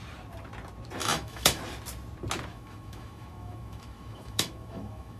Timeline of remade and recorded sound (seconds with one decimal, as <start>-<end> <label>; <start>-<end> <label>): 0.0-1.0 recorded; 1.0-1.6 remade; 1.6-2.5 recorded; 2.5-5.2 remade